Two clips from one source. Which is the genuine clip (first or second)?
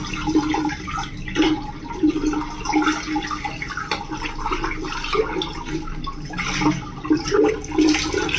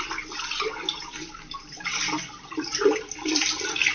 first